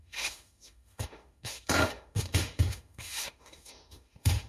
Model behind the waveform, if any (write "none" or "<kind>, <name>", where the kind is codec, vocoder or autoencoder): autoencoder, DAC-VAE